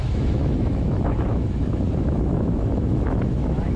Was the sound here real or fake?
fake